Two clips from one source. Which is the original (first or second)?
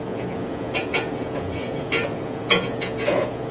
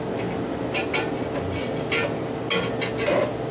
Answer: second